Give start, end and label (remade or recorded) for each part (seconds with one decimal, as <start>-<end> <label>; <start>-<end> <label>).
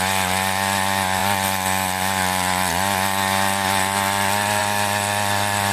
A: 0.0-5.7 recorded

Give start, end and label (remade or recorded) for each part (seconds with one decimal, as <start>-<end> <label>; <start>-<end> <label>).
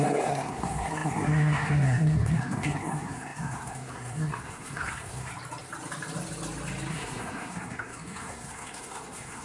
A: 0.0-5.3 remade; 5.3-6.9 recorded; 6.9-9.4 remade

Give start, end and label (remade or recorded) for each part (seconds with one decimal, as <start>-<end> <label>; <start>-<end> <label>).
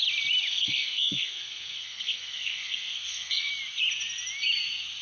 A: 0.0-0.5 recorded; 0.5-3.5 remade; 3.5-5.0 recorded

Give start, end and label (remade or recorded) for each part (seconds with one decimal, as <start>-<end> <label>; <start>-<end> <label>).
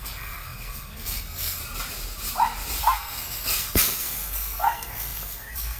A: 0.0-1.6 remade; 1.6-2.8 recorded; 2.8-5.8 remade